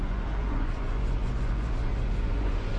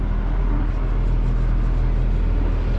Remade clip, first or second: first